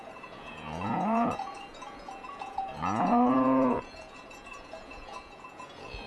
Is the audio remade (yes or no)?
yes